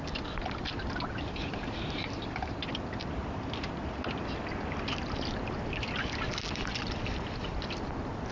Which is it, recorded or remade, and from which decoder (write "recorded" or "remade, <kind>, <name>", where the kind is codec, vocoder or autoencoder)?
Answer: recorded